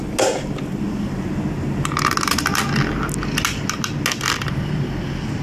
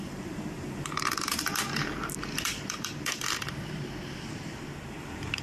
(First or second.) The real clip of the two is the first